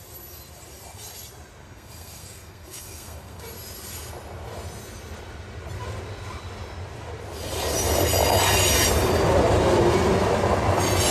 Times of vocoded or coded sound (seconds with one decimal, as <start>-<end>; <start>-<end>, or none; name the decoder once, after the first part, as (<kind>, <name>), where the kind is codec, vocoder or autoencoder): 1.6-3.4 (codec, SNAC)

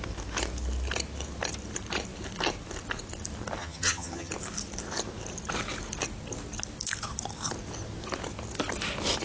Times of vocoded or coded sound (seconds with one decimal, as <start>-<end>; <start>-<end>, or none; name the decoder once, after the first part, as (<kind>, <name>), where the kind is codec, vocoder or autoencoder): 3.6-4.3 (vocoder, HiFi-GAN)

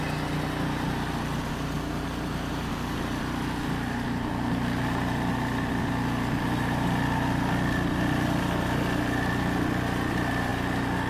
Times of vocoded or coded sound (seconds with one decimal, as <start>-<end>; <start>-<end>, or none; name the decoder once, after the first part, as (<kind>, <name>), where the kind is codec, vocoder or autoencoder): 0.0-10.5 (vocoder, BigVGAN v2)

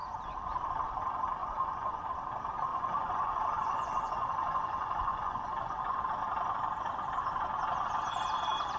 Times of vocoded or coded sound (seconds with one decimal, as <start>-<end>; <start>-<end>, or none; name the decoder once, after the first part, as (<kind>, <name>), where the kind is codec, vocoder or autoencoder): 0.0-0.7 (vocoder, Vocos); 1.4-2.0; 2.7-6.0

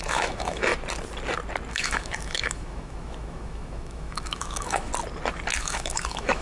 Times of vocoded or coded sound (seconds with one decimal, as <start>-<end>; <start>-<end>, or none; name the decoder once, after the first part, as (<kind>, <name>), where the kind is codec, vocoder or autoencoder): 0.0-0.7 (autoencoder, DAC-VAE); 1.7-4.9; 5.6-6.4

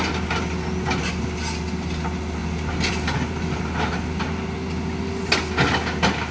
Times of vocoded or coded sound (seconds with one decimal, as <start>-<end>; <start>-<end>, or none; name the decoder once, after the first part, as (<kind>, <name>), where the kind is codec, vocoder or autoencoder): none